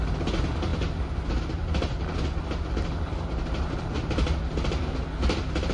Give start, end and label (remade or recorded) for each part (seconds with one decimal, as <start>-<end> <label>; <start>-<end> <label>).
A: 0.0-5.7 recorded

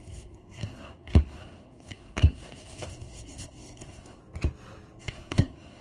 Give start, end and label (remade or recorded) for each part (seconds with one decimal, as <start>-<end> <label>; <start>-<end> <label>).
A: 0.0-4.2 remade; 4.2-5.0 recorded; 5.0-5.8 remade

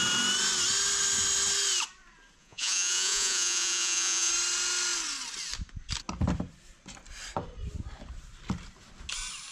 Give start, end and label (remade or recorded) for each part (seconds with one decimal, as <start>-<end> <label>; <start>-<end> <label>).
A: 0.0-2.4 recorded; 2.4-4.3 remade; 4.3-9.5 recorded

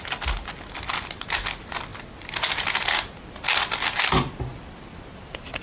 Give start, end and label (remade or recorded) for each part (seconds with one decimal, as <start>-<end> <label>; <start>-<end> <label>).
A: 0.0-5.6 recorded

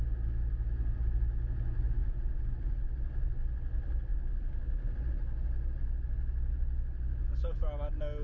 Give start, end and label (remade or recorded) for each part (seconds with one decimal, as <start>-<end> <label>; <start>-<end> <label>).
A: 0.0-2.0 recorded; 2.0-2.5 remade; 2.5-8.2 recorded

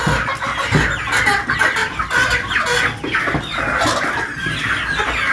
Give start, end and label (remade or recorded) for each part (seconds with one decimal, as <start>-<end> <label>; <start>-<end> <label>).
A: 0.0-5.3 recorded

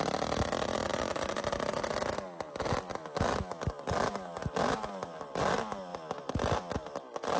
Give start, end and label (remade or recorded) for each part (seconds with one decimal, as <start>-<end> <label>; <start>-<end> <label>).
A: 0.0-7.4 recorded

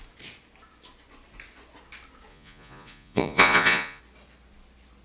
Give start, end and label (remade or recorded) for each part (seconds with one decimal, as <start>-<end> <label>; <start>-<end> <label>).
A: 0.0-2.3 recorded; 2.3-4.0 remade; 4.0-5.0 recorded